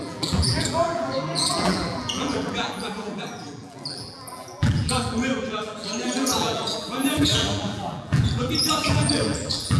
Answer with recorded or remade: remade